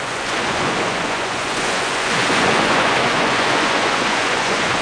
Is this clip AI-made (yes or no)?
yes